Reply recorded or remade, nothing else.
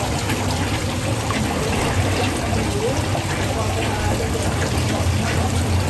recorded